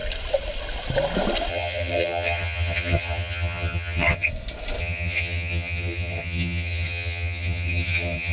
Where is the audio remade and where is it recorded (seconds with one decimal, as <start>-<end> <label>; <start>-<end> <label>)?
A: 0.0-1.5 recorded; 1.5-4.3 remade; 4.3-4.8 recorded; 4.8-8.3 remade